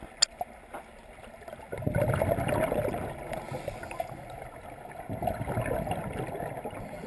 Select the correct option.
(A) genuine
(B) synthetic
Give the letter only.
A